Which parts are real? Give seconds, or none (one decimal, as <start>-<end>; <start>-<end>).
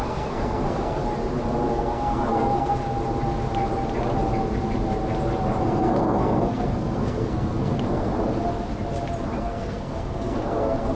1.0-1.7; 2.8-5.6; 8.1-9.4